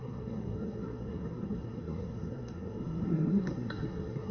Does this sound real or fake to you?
fake